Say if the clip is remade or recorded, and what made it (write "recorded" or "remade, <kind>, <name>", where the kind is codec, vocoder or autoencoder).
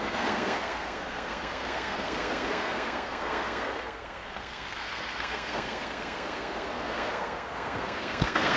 remade, codec, SNAC